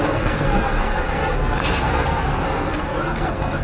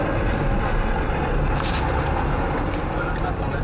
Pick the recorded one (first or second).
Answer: second